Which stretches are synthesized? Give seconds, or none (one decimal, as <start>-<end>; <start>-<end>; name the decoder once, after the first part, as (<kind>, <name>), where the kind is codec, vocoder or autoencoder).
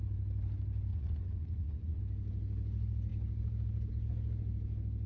0.9-2.0 (vocoder, Vocos)